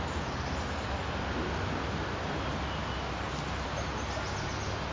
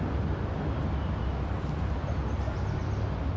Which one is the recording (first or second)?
first